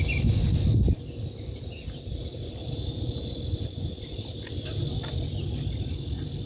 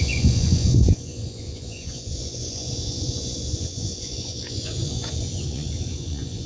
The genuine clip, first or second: first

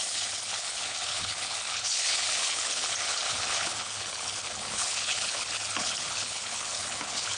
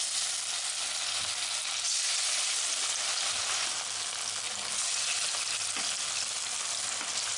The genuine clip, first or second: second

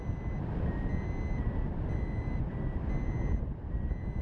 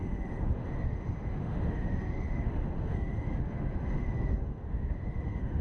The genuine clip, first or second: first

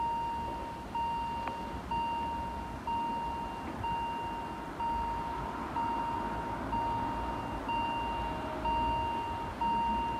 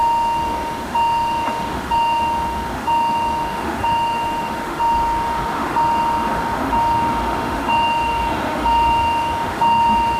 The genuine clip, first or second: first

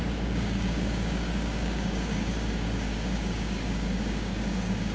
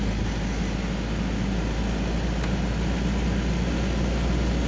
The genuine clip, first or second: second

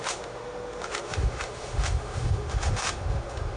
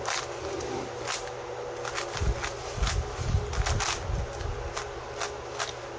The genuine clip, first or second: second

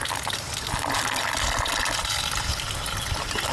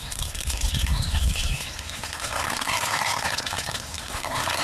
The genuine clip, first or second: first